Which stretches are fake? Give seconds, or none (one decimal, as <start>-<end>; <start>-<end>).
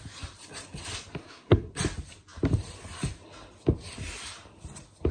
1.2-1.7